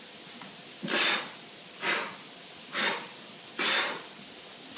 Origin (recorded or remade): recorded